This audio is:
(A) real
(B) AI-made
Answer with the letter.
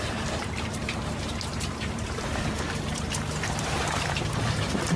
B